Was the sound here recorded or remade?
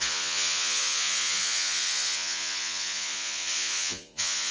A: remade